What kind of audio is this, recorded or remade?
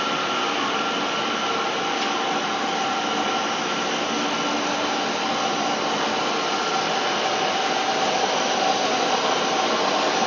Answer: recorded